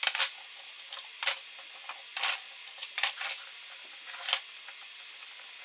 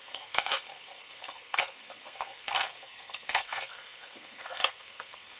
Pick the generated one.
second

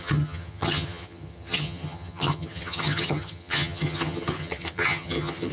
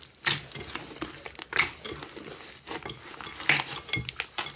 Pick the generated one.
first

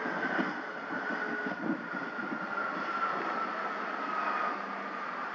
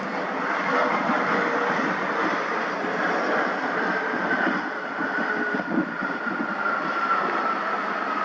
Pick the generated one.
second